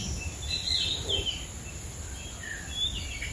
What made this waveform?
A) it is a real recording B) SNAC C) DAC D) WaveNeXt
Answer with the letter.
A